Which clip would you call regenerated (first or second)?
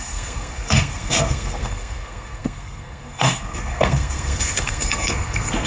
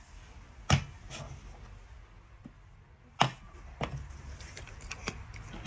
first